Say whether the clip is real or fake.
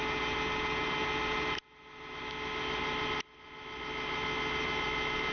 real